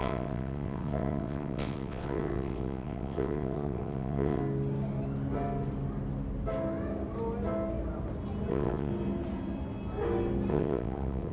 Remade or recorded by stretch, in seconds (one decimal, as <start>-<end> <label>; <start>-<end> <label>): 0.0-4.4 remade; 4.4-8.5 recorded; 8.5-8.9 remade; 8.9-10.5 recorded; 10.5-11.3 remade